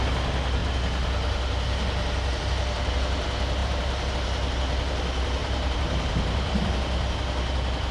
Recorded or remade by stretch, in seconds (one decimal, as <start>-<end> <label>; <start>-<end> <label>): 0.0-3.6 recorded; 3.6-4.1 remade; 4.1-5.4 recorded; 5.4-6.7 remade; 6.7-7.9 recorded